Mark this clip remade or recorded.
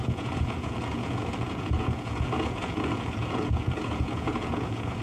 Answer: remade